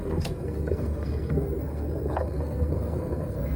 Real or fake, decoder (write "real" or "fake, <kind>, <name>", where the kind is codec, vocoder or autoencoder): fake, codec, SNAC